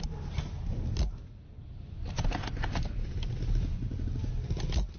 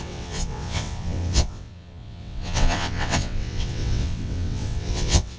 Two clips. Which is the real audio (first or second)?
first